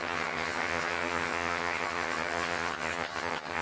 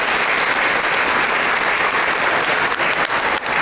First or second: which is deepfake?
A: first